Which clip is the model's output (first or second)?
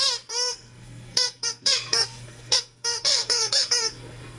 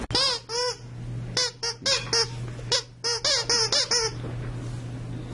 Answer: first